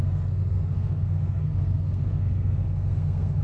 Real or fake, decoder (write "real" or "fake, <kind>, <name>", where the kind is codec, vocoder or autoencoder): fake, codec, SNAC